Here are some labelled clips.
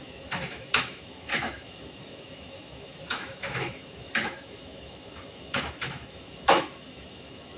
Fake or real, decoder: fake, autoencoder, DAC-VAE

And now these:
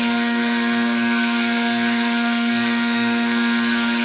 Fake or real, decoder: fake, codec, SNAC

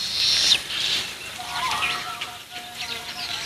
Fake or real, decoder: fake, vocoder, BigVGAN v2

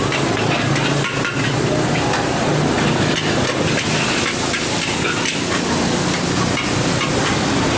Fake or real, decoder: real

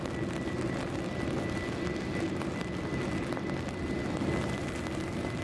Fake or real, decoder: real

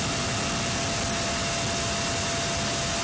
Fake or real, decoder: real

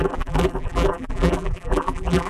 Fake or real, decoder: fake, vocoder, BigVGAN v2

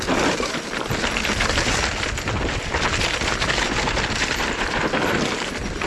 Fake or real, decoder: real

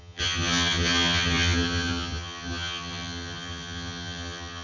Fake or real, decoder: fake, vocoder, HiFi-GAN